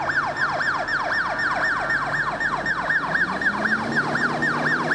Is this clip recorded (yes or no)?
yes